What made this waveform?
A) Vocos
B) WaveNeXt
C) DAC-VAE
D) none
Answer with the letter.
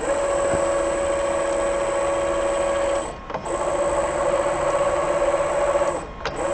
D